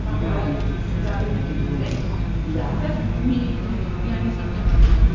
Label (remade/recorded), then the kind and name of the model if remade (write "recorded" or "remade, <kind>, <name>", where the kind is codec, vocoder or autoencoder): recorded